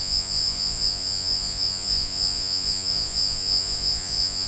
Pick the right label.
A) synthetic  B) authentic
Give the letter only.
A